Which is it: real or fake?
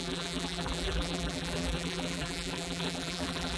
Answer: fake